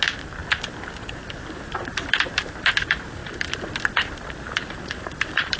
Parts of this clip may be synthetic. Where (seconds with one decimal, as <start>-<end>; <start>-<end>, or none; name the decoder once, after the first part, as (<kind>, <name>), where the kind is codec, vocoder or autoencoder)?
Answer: 0.0-0.4 (vocoder, BigVGAN v2); 1.7-3.2; 4.8-5.6